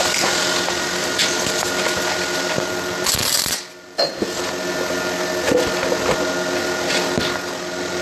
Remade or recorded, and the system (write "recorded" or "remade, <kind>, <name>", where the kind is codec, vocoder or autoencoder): remade, vocoder, BigVGAN v2